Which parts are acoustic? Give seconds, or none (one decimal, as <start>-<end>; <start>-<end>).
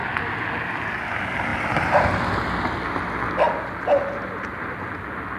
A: 0.0-5.4